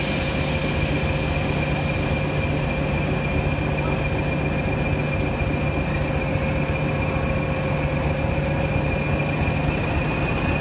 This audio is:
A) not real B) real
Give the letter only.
B